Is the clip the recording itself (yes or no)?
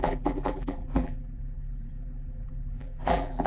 no